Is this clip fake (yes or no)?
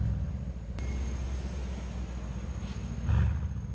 no